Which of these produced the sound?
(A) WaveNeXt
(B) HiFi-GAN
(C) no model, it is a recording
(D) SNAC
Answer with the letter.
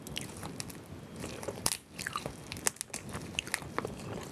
C